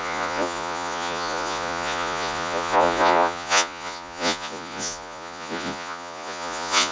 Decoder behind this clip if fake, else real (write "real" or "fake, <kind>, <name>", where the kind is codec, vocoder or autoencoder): fake, vocoder, Vocos